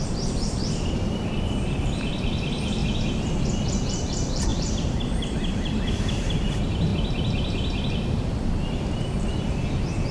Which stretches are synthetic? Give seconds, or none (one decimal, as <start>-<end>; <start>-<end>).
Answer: 0.0-2.8; 3.8-6.9; 7.9-10.1